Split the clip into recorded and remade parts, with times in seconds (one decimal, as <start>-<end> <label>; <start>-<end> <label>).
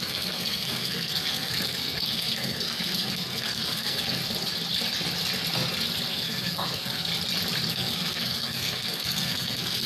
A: 0.0-4.2 remade; 4.2-6.1 recorded; 6.1-7.1 remade; 7.1-7.7 recorded; 7.7-9.9 remade